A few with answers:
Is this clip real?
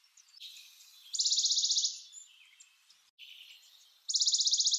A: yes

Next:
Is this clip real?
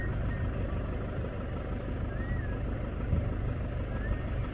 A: yes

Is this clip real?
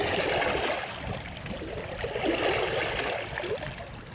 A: yes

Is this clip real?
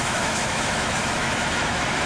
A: no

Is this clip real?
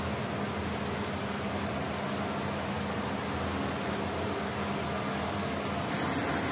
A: yes